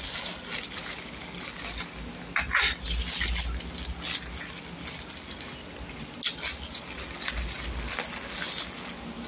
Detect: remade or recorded recorded